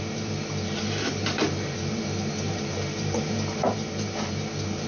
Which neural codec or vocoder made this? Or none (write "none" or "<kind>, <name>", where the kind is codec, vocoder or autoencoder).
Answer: vocoder, BigVGAN v2